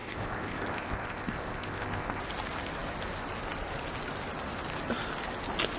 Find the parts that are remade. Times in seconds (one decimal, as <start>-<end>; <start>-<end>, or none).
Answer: 0.0-2.2